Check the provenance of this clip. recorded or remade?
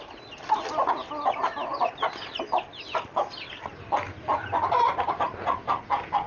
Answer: recorded